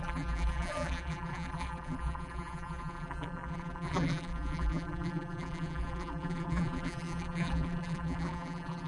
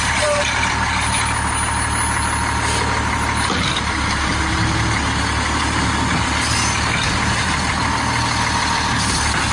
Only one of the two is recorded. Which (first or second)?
second